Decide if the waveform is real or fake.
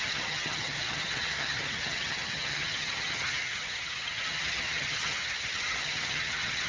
fake